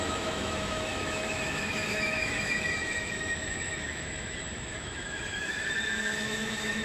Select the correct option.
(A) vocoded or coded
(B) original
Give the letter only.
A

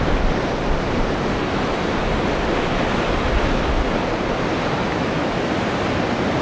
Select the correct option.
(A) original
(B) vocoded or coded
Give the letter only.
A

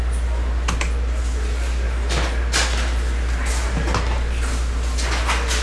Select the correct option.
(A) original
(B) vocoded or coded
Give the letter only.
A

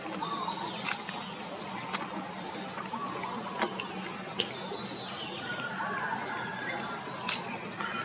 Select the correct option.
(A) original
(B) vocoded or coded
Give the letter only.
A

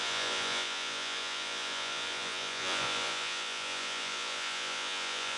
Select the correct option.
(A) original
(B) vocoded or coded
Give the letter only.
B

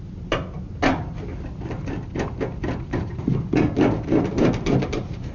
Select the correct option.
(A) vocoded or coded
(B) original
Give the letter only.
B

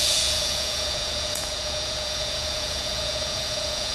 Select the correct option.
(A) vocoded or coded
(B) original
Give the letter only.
A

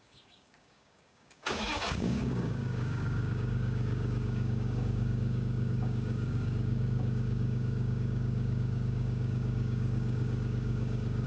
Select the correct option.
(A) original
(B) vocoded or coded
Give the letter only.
B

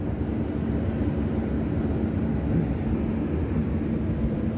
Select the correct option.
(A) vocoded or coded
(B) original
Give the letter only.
B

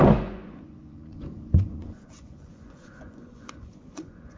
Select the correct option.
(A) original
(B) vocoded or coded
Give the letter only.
B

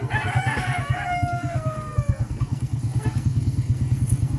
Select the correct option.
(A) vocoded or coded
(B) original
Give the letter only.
A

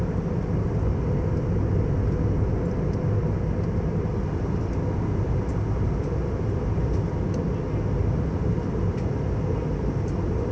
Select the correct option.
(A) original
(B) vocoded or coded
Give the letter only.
A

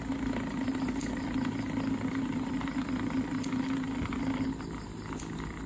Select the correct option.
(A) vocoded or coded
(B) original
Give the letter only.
B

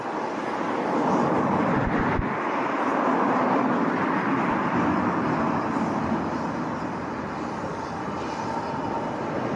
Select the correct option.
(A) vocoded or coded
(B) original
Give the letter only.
B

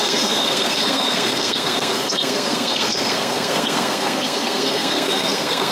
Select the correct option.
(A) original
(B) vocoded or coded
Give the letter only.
B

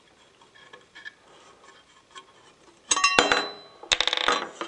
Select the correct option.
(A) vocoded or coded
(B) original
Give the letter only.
B